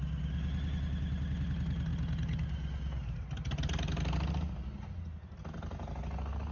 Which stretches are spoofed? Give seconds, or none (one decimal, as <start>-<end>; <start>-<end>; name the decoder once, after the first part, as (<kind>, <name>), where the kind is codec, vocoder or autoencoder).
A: none